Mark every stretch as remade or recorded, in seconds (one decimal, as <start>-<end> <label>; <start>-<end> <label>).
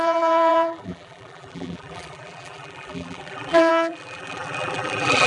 0.0-5.3 remade